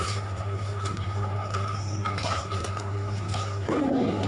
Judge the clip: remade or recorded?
remade